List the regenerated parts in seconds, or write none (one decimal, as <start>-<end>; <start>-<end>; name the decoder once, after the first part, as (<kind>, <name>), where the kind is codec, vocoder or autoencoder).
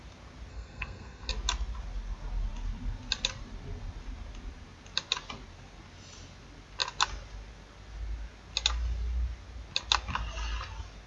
0.5-1.3 (codec, SNAC)